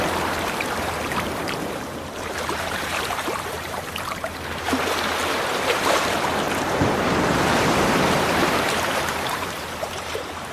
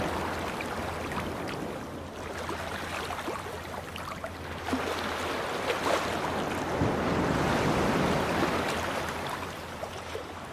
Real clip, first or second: second